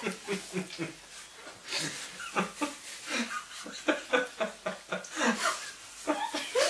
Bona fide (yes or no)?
yes